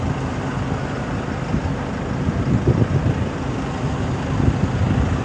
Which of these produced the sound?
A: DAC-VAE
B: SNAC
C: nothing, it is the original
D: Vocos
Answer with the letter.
C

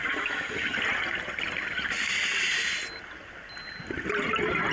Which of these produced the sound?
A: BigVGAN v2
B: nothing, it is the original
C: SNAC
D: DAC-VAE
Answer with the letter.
B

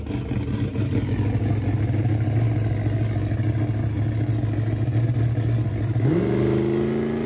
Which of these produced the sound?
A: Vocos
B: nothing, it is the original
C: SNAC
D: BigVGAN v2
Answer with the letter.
B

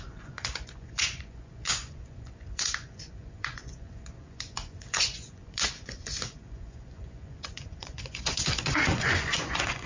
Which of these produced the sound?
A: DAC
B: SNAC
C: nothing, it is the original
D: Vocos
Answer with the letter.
D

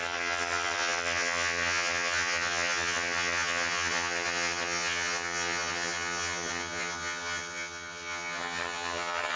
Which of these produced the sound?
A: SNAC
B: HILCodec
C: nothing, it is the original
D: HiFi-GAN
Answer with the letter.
D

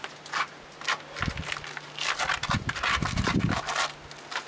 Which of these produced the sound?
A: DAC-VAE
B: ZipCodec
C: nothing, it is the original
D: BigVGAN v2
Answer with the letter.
C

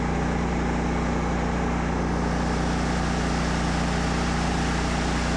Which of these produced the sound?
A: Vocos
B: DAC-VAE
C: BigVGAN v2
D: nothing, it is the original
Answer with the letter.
D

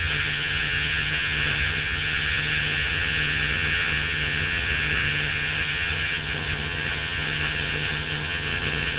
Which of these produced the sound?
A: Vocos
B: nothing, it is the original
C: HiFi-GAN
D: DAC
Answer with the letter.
C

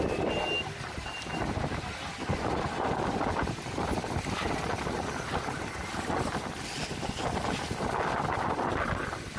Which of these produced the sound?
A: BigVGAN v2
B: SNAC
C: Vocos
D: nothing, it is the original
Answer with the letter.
D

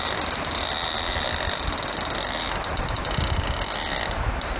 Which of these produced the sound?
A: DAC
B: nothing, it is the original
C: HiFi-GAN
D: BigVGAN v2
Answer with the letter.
B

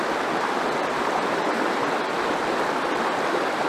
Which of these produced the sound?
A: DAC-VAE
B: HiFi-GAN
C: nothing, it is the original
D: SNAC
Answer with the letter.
C